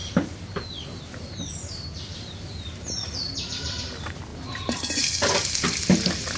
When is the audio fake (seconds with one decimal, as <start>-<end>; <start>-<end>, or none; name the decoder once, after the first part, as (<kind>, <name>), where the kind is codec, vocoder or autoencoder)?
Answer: 0.0-3.8 (vocoder, BigVGAN v2); 4.3-5.8